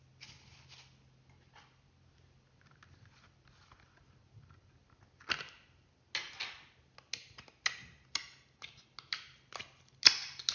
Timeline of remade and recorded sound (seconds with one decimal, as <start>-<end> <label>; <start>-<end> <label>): 0.0-10.5 recorded

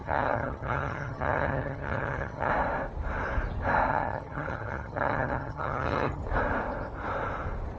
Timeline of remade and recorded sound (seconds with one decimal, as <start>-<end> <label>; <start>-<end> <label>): 0.0-2.5 remade; 2.5-3.9 recorded; 3.9-6.2 remade; 6.2-7.8 recorded

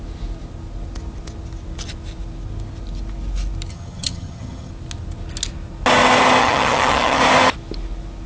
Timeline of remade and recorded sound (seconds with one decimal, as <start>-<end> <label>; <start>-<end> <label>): 0.0-3.7 recorded; 3.7-4.7 remade; 4.7-6.4 recorded; 6.4-7.2 remade; 7.2-8.3 recorded